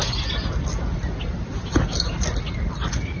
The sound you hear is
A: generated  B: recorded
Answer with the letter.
B